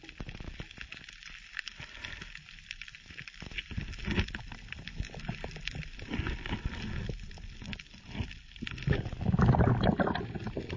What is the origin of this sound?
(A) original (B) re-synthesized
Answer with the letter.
A